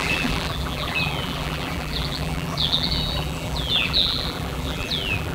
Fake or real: fake